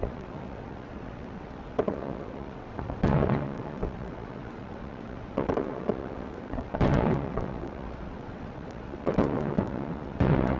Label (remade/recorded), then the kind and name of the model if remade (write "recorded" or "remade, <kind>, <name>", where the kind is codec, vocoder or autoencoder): remade, vocoder, WaveNeXt